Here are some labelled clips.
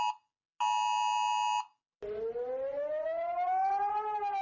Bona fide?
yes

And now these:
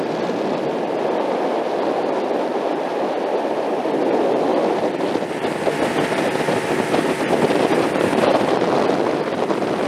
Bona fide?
yes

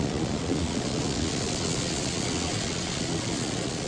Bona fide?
no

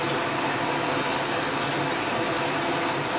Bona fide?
yes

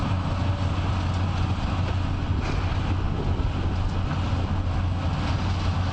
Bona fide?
yes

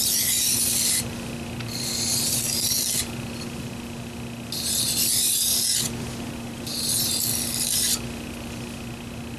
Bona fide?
yes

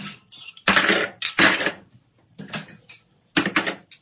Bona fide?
yes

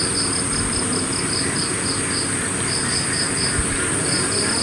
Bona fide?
yes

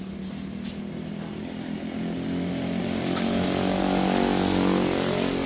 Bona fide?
yes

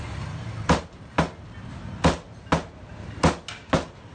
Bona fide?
yes